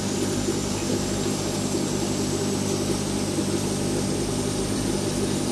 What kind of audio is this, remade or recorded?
recorded